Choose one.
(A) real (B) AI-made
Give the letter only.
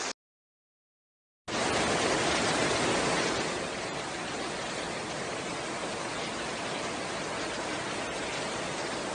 A